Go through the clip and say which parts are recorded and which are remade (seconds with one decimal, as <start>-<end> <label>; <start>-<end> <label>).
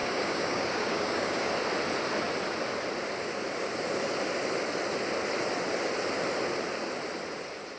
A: 0.0-1.5 remade; 1.5-7.8 recorded